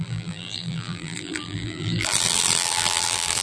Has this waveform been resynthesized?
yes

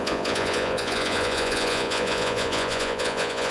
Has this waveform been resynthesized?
yes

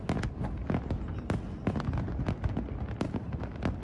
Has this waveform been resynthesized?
no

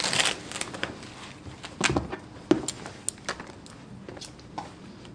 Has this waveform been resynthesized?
no